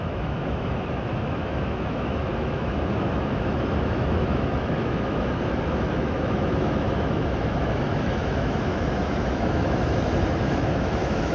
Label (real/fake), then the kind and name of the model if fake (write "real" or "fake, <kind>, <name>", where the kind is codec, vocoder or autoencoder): fake, autoencoder, DAC-VAE